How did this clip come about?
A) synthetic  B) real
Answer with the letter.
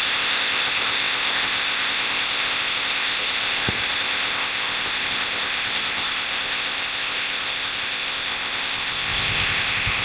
A